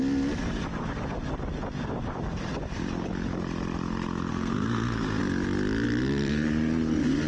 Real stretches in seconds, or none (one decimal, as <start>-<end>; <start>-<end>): 0.0-4.3; 5.2-7.3